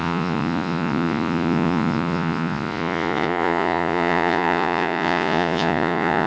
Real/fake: fake